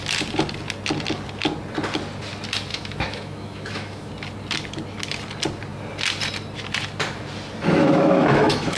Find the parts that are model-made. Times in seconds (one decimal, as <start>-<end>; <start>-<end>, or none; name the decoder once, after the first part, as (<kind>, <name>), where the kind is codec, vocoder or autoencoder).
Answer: 2.7-4.1 (autoencoder, DAC-VAE); 7.8-8.8